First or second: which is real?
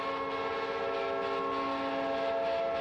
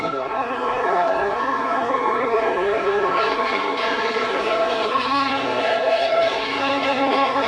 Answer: first